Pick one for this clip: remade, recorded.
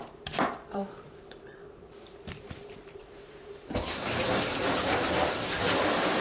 remade